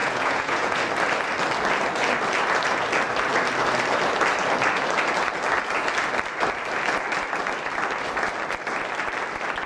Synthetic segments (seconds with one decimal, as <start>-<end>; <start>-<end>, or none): 0.0-0.8

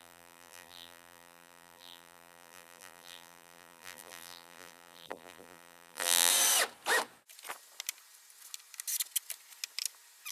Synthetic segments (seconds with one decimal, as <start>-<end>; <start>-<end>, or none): 0.0-6.3